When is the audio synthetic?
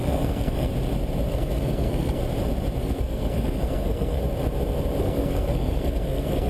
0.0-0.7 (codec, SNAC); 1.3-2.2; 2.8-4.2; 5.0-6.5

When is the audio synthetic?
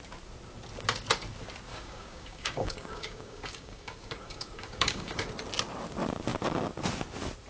1.7-5.2 (codec, DAC)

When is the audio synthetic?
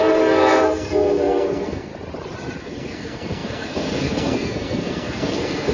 0.0-1.9 (codec, SNAC); 2.6-5.7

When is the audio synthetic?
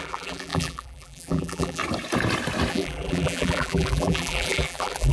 0.0-1.8 (vocoder, BigVGAN v2); 2.7-5.1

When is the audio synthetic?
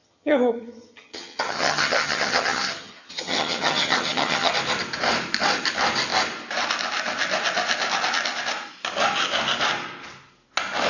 0.0-4.5 (vocoder, HiFi-GAN)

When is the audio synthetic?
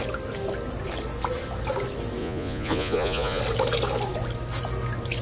2.2-3.4 (vocoder, Vocos)